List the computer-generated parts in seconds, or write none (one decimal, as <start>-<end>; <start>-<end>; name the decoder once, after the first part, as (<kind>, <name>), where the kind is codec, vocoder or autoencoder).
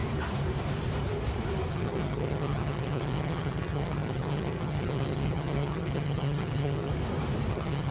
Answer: 1.7-6.9 (vocoder, HiFi-GAN); 7.5-7.9